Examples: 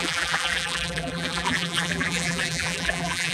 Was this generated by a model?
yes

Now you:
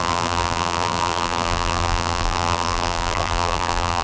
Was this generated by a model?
yes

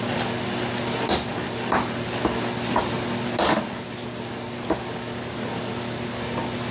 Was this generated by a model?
no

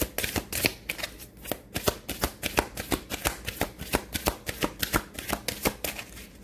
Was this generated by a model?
no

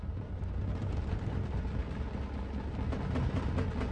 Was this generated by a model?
no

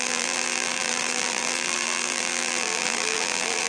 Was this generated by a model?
yes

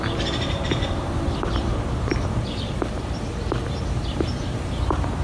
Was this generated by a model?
yes